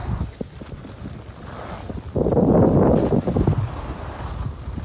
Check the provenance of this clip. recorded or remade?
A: recorded